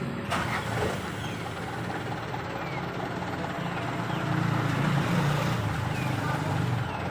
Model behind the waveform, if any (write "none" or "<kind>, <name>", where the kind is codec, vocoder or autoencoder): none